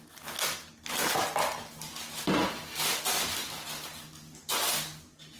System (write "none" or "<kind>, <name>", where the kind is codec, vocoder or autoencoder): none